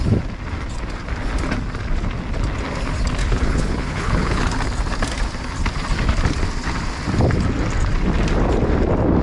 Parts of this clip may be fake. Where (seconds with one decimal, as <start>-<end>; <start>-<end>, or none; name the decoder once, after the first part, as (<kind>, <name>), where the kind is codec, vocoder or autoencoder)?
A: 3.2-4.4 (codec, HILCodec)